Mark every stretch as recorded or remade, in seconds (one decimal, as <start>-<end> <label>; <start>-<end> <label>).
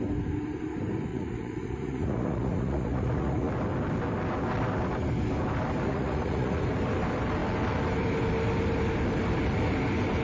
0.0-1.1 recorded; 1.1-3.5 remade; 3.5-5.9 recorded; 5.9-6.6 remade; 6.6-10.2 recorded